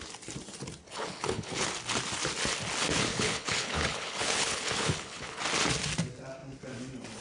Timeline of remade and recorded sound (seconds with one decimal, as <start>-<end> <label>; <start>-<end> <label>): 0.0-0.8 recorded; 0.8-1.7 remade; 1.7-3.1 recorded; 3.1-5.4 remade; 5.4-7.2 recorded